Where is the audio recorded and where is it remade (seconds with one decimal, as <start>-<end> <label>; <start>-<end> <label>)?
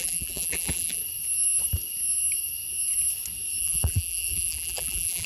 0.0-1.0 remade; 1.0-3.6 recorded; 3.6-5.3 remade